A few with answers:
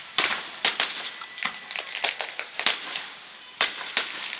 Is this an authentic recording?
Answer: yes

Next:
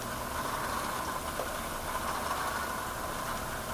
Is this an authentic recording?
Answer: yes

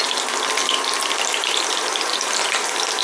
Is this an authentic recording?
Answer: no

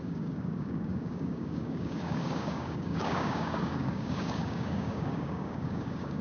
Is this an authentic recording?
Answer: no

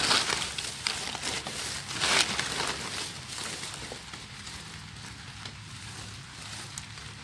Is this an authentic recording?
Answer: yes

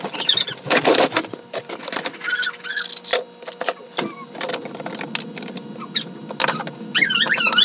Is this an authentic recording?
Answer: yes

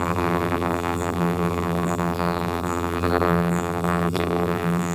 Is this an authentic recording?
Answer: no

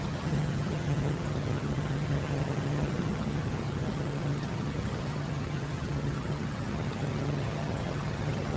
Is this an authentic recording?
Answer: no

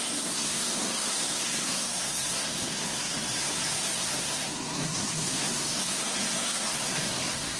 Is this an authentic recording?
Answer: no